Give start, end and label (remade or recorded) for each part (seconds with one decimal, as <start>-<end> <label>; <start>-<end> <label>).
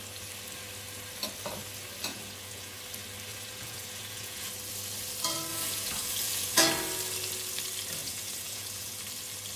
0.0-2.1 recorded; 2.1-2.8 remade; 2.8-3.3 recorded; 3.3-4.5 remade; 4.5-5.5 recorded; 5.5-6.7 remade; 6.7-8.0 recorded; 8.0-9.0 remade; 9.0-9.6 recorded